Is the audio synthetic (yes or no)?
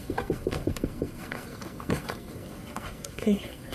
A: yes